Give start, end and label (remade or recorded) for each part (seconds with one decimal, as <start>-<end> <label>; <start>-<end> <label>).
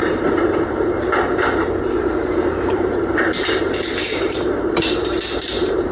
0.0-5.9 remade